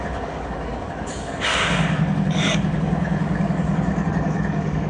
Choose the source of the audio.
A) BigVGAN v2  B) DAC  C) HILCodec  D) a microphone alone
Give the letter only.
B